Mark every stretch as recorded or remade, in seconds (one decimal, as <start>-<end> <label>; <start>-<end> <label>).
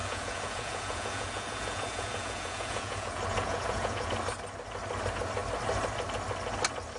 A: 0.0-4.1 remade; 4.1-7.0 recorded